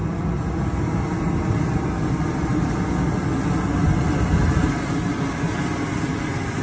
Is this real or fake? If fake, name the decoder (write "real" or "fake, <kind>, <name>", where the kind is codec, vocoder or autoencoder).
real